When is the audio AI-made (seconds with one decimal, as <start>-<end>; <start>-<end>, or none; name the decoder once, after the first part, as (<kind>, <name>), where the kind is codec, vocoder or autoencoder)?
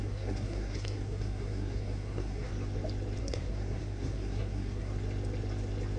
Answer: 0.0-2.5 (codec, SNAC); 3.2-4.9